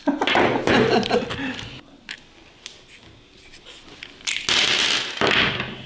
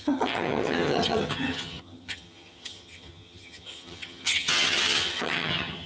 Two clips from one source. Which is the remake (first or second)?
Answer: second